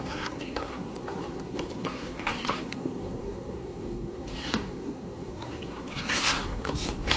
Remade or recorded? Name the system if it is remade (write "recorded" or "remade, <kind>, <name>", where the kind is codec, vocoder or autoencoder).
remade, codec, SNAC